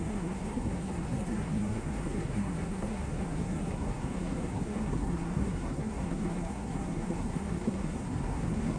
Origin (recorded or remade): remade